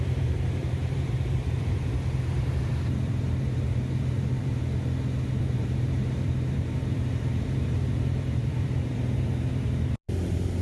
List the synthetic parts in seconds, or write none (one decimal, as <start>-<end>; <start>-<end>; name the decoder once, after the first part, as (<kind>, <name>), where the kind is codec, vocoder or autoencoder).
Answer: 0.0-4.6 (vocoder, BigVGAN v2); 5.4-10.6

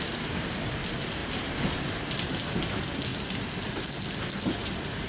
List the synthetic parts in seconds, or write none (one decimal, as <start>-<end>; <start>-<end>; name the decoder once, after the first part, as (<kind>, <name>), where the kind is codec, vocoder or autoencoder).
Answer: 1.2-2.3 (vocoder, BigVGAN v2); 3.1-4.0

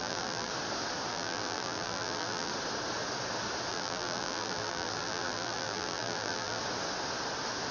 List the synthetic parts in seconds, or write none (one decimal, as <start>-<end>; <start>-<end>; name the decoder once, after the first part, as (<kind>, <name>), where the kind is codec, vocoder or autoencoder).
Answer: 0.0-0.5 (vocoder, BigVGAN v2); 1.1-2.5; 3.7-6.6

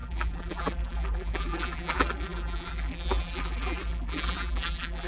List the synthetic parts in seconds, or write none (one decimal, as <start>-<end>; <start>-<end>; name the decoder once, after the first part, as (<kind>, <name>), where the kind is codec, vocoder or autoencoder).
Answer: 0.0-5.1 (vocoder, BigVGAN v2)

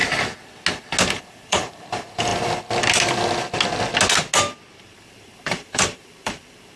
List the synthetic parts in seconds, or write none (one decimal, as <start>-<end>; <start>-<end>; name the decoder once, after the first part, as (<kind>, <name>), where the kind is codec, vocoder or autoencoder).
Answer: 1.2-2.3 (vocoder, BigVGAN v2); 4.8-6.8

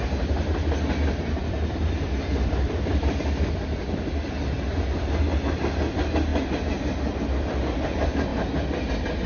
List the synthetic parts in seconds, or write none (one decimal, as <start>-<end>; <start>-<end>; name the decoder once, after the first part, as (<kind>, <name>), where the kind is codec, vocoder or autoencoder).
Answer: 1.4-4.2 (vocoder, BigVGAN v2)

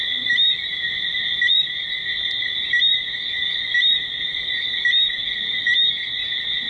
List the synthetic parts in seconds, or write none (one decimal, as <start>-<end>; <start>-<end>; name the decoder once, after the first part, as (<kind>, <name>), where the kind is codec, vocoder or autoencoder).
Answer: 0.7-4.7 (vocoder, BigVGAN v2)

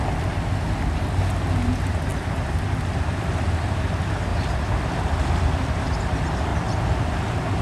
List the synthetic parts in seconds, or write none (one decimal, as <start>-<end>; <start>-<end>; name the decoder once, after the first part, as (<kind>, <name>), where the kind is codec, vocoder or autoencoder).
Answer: 2.1-3.9 (vocoder, BigVGAN v2); 4.3-6.0; 6.5-7.6